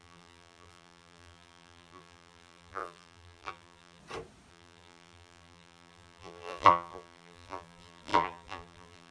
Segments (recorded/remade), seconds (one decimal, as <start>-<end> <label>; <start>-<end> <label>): 0.0-4.0 remade; 4.0-4.5 recorded; 4.5-9.1 remade